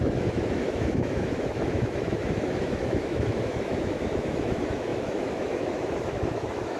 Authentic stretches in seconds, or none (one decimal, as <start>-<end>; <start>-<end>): none